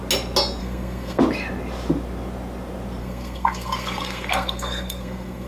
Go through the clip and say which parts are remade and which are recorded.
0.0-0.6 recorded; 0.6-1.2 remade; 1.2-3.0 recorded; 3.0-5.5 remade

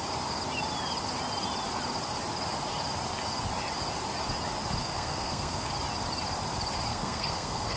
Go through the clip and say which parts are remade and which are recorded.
0.0-4.8 recorded; 4.8-5.7 remade; 5.7-6.9 recorded; 6.9-7.8 remade

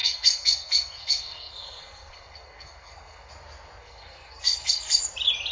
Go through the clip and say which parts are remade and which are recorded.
0.0-3.3 remade; 3.3-3.8 recorded; 3.8-5.0 remade; 5.0-5.5 recorded

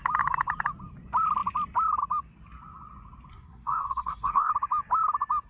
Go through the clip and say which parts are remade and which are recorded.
0.0-3.3 recorded; 3.3-4.5 remade; 4.5-5.5 recorded